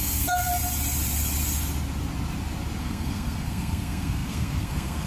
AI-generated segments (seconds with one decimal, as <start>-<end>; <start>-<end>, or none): 0.0-0.5; 2.8-5.1

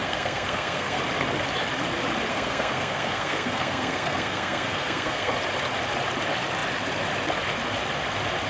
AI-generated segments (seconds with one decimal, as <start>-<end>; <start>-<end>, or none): 0.0-1.0; 2.3-5.3

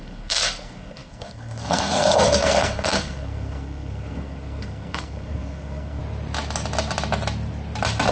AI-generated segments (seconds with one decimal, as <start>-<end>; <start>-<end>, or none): 0.0-6.0

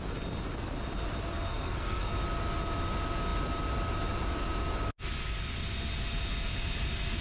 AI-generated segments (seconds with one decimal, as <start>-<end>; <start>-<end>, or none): 1.5-2.1